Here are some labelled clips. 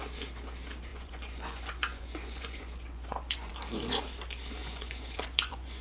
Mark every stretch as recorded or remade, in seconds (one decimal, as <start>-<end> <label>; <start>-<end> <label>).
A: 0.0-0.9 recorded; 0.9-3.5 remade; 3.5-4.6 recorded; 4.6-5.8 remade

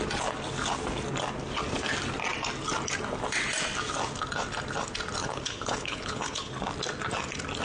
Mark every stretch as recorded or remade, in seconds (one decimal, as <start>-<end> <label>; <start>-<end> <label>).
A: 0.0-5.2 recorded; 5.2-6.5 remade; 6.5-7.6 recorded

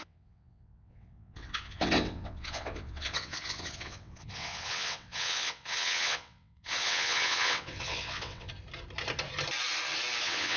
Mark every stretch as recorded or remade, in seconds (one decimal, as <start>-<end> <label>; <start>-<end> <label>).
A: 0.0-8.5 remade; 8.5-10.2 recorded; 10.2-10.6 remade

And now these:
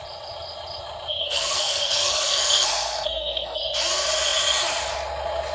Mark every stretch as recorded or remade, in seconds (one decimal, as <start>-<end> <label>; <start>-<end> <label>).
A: 0.0-1.2 recorded; 1.2-3.6 remade; 3.6-5.5 recorded